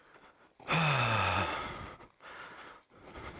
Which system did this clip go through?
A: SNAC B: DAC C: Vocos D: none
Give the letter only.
D